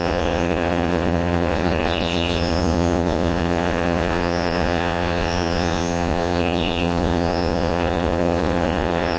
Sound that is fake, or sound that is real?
fake